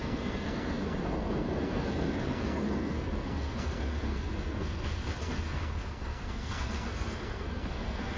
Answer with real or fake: fake